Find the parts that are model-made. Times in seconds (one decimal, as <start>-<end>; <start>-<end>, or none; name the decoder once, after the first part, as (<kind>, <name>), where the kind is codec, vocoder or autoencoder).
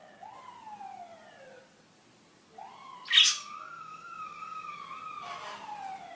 3.3-4.8 (codec, DAC)